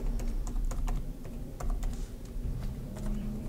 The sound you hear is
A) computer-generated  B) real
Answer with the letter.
A